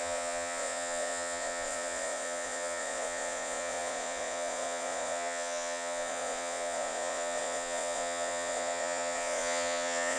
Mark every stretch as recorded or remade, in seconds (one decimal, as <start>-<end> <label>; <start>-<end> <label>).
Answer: 0.0-10.2 remade